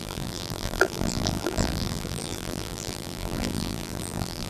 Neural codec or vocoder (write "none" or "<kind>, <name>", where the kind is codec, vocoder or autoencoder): vocoder, BigVGAN v2